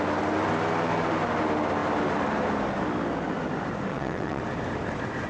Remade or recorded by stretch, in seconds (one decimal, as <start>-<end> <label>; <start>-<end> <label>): 0.0-3.9 recorded; 3.9-4.4 remade; 4.4-5.3 recorded

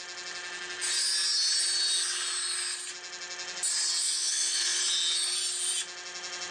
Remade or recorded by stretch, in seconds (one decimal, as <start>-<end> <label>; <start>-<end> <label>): 0.0-4.0 recorded; 4.0-4.8 remade; 4.8-6.5 recorded

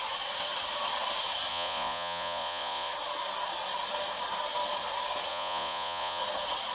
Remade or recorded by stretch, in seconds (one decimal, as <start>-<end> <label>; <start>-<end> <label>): 0.0-1.5 recorded; 1.5-2.9 remade; 2.9-5.3 recorded; 5.3-6.2 remade; 6.2-6.7 recorded